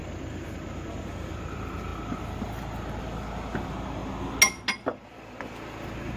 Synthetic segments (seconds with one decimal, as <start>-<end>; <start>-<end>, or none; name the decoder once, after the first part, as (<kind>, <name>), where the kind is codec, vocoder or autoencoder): none